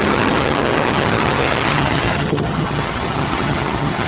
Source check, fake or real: fake